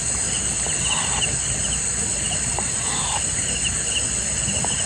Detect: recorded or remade recorded